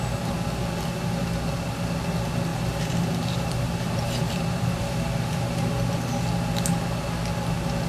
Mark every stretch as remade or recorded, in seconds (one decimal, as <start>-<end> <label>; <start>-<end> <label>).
0.0-2.5 recorded; 2.5-4.8 remade; 4.8-7.9 recorded